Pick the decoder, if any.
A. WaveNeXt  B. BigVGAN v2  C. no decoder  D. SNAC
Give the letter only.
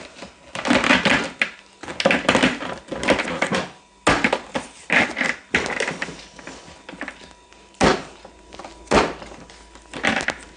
C